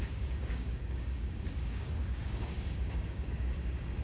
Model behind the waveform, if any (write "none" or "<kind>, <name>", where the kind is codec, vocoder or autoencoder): codec, DAC